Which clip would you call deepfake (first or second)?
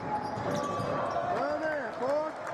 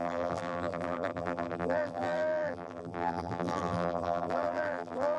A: second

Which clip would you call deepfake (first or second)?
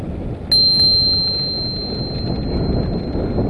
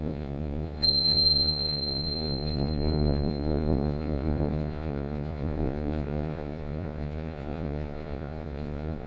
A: second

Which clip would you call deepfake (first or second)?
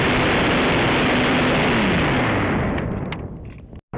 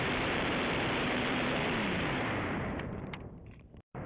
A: second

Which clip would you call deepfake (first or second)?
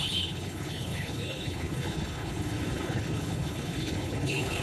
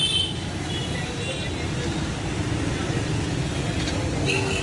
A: first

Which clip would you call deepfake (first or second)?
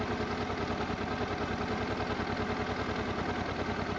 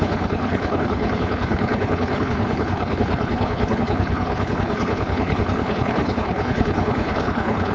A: second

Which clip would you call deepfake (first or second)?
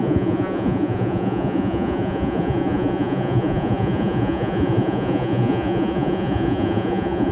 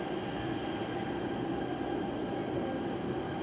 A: first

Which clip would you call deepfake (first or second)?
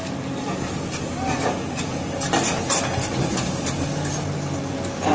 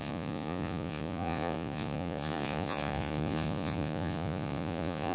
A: second